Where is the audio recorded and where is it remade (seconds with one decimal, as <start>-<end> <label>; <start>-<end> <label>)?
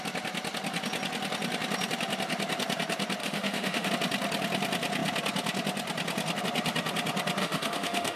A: 0.0-3.2 recorded; 3.2-3.9 remade; 3.9-7.4 recorded; 7.4-8.2 remade